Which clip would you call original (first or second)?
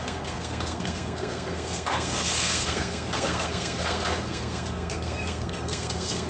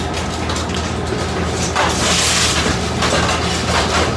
second